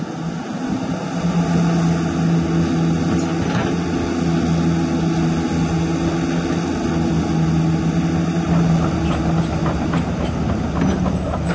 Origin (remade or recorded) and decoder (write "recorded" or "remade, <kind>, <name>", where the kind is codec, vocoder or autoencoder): recorded